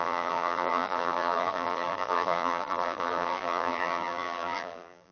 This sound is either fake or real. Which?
fake